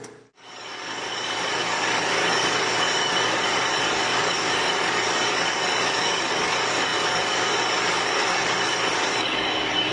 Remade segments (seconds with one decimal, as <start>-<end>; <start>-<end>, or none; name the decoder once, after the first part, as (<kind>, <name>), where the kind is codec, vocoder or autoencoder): 0.0-9.9 (codec, DAC)